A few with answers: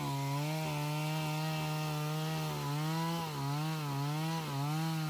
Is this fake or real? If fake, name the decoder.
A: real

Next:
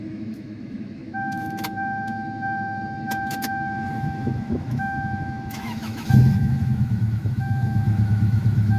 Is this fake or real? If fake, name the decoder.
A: fake, autoencoder, DAC-VAE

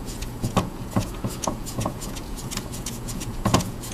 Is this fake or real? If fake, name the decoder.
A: fake, vocoder, Vocos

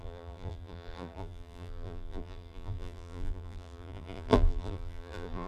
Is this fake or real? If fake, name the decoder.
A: fake, vocoder, BigVGAN v2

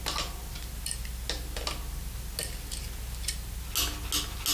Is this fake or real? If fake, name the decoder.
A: real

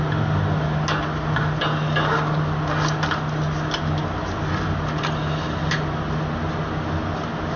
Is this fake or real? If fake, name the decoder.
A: real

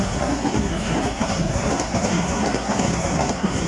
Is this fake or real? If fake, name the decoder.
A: fake, codec, SNAC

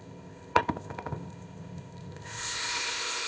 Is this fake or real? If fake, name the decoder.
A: fake, codec, ZipCodec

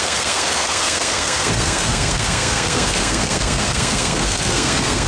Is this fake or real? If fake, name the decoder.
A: fake, codec, SNAC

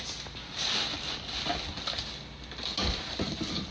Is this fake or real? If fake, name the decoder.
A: real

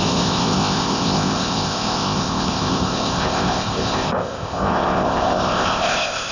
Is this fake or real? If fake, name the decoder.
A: fake, codec, ZipCodec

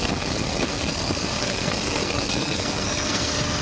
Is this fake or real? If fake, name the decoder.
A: fake, codec, SNAC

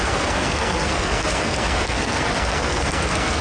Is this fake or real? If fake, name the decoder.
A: fake, codec, SNAC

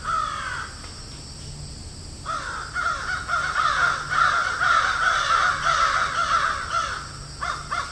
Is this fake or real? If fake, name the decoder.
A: real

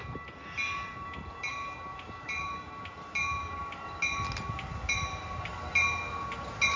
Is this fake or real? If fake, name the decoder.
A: real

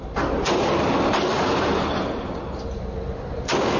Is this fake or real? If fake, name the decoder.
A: real